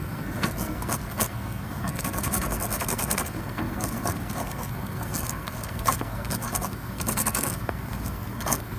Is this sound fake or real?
fake